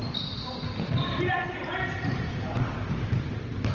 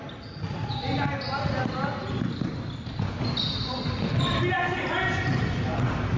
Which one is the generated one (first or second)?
first